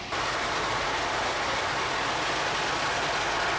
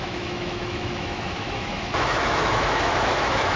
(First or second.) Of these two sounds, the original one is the first